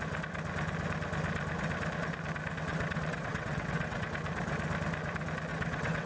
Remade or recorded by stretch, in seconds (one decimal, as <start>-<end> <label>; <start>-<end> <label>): 0.0-2.7 recorded; 2.7-4.1 remade; 4.1-5.5 recorded; 5.5-6.1 remade